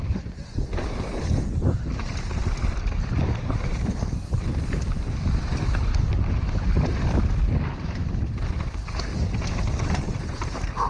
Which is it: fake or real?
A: real